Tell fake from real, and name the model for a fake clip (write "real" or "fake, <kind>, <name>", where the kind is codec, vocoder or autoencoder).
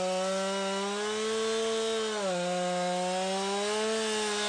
real